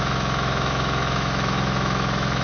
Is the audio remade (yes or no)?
yes